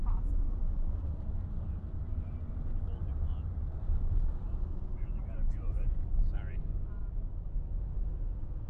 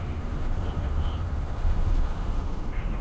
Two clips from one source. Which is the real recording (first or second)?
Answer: first